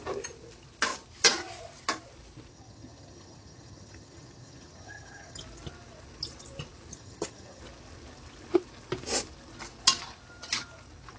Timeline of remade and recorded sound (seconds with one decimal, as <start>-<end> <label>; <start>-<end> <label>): 0.0-2.5 recorded; 2.5-5.4 remade; 5.4-6.9 recorded; 6.9-7.6 remade; 7.6-11.2 recorded